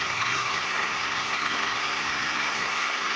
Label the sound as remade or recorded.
remade